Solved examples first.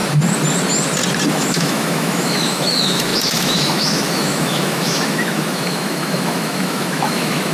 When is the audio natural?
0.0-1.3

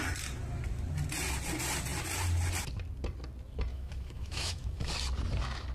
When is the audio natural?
0.0-3.7; 4.9-5.7

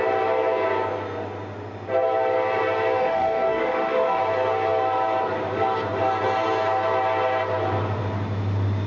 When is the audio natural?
0.0-3.0; 4.2-8.9

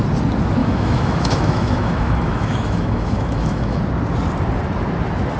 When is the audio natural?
0.0-0.6; 3.8-5.4

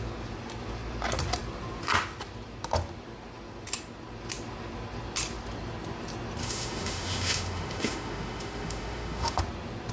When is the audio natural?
0.0-6.4; 9.4-9.9

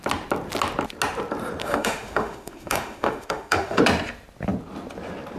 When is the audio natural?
0.0-1.6; 3.8-5.4